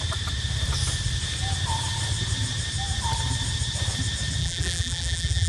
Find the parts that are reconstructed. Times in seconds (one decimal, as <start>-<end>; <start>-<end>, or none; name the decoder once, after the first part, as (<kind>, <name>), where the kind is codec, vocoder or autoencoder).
4.4-5.5 (vocoder, BigVGAN v2)